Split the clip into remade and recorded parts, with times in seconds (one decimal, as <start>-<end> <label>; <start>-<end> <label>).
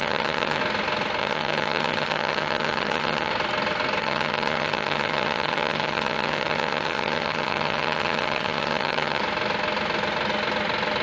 0.0-0.6 remade; 0.6-1.2 recorded; 1.2-3.3 remade; 3.3-4.0 recorded; 4.0-9.2 remade; 9.2-11.0 recorded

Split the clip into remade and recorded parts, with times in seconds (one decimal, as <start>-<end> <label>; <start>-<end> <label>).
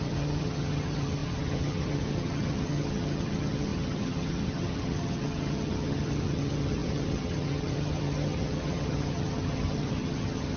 0.0-10.6 remade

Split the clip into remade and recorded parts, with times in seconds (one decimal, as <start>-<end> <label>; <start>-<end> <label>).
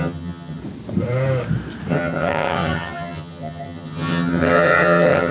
0.0-0.6 remade; 0.6-1.9 recorded; 1.9-5.3 remade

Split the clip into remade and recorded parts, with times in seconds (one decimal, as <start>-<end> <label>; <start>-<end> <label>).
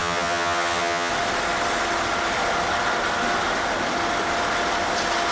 0.0-1.1 remade; 1.1-5.3 recorded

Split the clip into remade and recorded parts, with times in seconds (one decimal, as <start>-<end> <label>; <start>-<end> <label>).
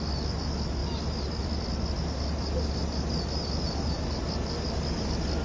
0.0-5.4 recorded